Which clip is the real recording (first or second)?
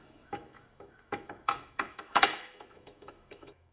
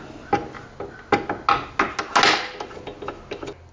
second